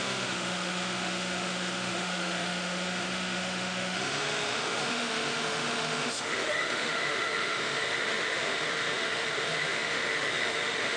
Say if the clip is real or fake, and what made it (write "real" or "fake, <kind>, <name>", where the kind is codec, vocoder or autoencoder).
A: fake, autoencoder, DAC-VAE